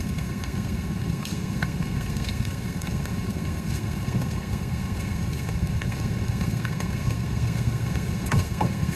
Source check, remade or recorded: remade